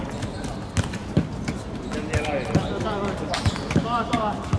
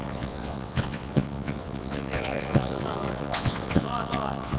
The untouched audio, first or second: first